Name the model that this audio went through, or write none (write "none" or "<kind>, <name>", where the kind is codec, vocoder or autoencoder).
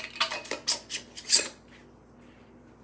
none